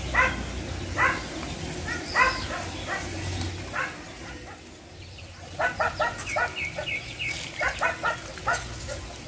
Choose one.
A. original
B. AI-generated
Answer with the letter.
A